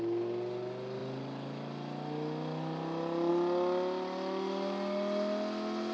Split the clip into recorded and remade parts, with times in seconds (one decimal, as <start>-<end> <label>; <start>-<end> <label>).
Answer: 0.0-5.9 recorded